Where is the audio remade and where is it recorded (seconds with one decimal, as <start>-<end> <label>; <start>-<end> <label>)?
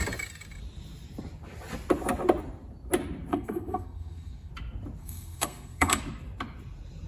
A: 0.0-3.3 recorded; 3.3-4.5 remade; 4.5-5.0 recorded; 5.0-6.0 remade; 6.0-7.1 recorded